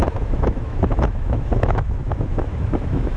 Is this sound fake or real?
fake